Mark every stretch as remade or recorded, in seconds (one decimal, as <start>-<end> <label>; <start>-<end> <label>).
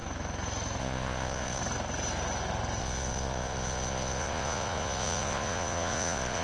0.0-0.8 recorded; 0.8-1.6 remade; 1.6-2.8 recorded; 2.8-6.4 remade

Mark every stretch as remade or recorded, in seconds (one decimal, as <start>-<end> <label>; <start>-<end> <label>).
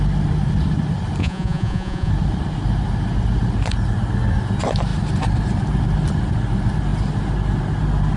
0.0-1.2 recorded; 1.2-2.1 remade; 2.1-8.2 recorded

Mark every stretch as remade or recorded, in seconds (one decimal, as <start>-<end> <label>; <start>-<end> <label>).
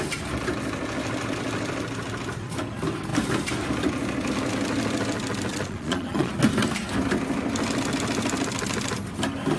0.0-5.5 recorded; 5.5-6.3 remade; 6.3-9.6 recorded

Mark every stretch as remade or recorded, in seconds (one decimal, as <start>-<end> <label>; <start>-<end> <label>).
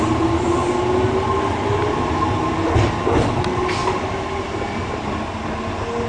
0.0-6.1 recorded